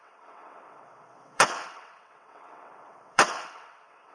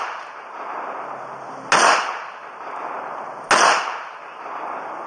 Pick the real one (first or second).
second